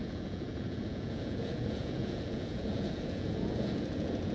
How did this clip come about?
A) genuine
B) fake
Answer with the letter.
B